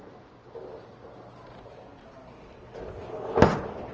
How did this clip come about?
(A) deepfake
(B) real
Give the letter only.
B